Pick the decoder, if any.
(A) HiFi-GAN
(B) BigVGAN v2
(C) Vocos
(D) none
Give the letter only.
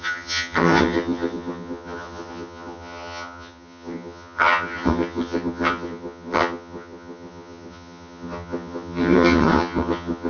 A